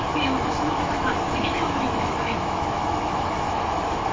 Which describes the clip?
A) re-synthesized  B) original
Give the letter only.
A